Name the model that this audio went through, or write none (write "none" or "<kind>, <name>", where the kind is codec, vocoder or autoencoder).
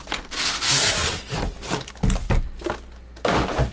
none